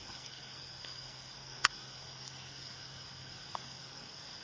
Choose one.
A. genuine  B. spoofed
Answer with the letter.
B